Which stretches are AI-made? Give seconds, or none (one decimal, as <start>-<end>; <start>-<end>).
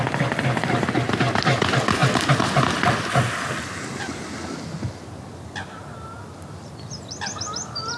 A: none